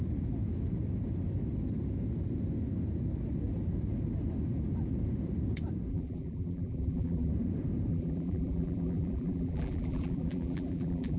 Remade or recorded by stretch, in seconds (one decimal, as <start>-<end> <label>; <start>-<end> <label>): 0.0-5.9 recorded; 5.9-7.3 remade; 7.3-7.9 recorded; 7.9-11.2 remade